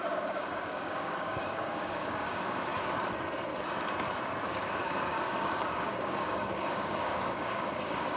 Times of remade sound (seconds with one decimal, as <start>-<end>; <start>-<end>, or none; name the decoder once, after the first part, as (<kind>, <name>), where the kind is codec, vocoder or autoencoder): 0.0-2.7 (codec, DAC); 4.6-8.2